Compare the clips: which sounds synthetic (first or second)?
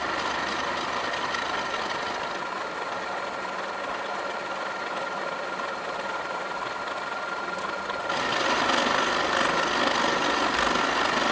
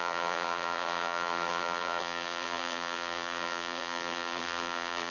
second